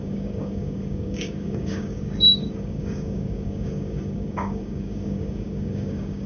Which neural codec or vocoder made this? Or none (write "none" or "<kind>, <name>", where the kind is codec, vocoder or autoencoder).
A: codec, DAC